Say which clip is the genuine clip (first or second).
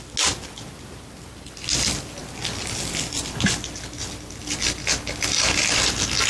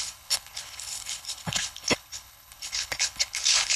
first